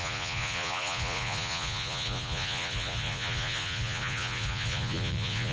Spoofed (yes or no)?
yes